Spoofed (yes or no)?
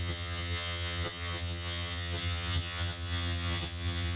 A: yes